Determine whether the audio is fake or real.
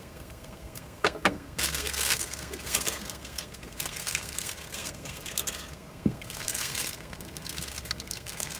fake